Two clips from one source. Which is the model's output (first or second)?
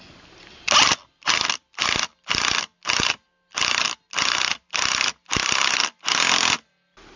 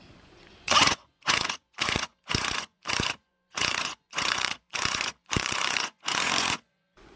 second